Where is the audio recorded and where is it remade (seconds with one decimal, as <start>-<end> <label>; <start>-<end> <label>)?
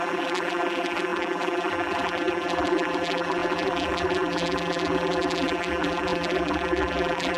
0.0-7.4 remade